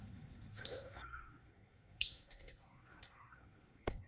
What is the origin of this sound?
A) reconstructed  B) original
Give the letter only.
A